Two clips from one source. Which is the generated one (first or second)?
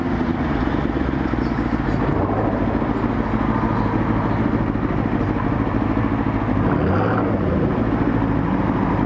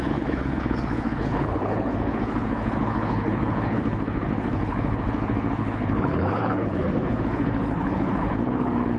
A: second